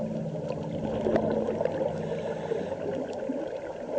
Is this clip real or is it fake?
real